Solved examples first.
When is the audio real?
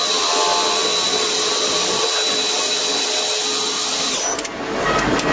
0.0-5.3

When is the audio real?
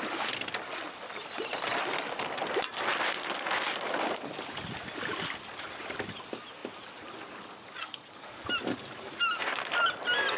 0.0-7.8; 8.4-10.4